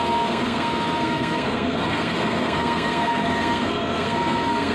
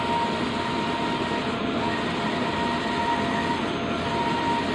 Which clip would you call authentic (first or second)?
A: second